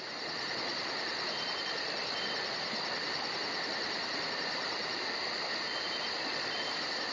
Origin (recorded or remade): recorded